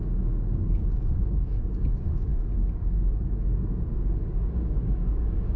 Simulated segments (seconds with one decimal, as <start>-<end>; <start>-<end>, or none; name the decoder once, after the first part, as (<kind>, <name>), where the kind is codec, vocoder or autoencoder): 0.0-5.6 (codec, DAC)

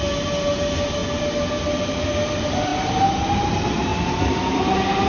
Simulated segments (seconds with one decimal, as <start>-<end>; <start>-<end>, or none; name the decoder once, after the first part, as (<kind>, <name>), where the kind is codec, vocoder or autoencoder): none